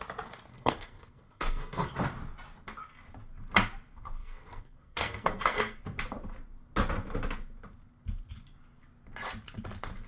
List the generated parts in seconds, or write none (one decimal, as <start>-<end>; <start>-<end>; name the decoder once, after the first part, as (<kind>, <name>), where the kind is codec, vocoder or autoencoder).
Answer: 0.5-1.9 (codec, SNAC); 4.2-5.8